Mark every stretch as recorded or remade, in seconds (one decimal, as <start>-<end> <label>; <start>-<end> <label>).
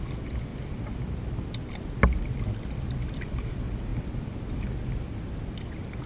0.0-6.1 recorded